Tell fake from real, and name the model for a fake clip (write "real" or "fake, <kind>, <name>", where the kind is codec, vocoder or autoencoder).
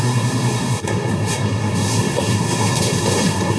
fake, codec, SNAC